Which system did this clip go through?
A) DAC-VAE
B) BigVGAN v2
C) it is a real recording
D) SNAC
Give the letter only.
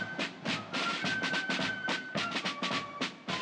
C